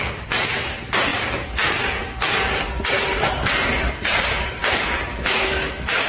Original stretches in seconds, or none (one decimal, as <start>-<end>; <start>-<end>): 0.0-5.1